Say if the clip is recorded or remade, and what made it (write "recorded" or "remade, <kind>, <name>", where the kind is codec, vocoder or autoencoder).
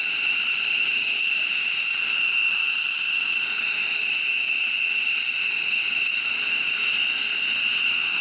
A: recorded